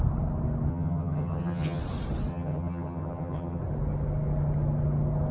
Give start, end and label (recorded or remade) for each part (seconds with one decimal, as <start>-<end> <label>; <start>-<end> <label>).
0.0-0.7 recorded; 0.7-1.8 remade; 1.8-2.3 recorded; 2.3-3.6 remade; 3.6-5.3 recorded